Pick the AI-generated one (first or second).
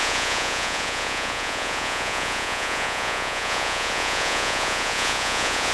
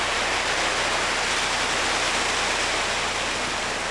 first